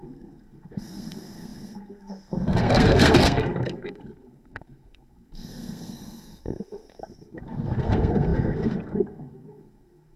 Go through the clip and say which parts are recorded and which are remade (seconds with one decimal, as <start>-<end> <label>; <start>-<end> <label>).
0.0-10.2 remade